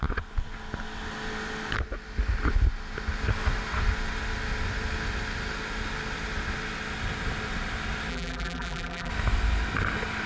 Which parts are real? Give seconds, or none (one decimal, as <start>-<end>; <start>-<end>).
0.0-8.1; 9.1-10.3